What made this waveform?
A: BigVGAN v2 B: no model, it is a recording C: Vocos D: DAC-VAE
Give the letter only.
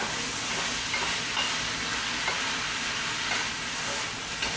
B